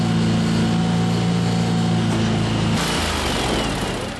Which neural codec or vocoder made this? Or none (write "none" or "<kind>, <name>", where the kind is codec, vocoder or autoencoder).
none